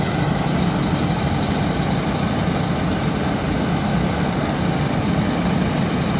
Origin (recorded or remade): recorded